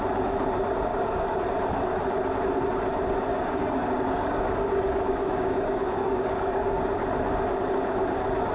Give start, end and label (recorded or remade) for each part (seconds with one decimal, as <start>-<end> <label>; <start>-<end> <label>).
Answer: 0.0-0.9 recorded; 0.9-1.4 remade; 1.4-3.3 recorded; 3.3-6.8 remade; 6.8-8.5 recorded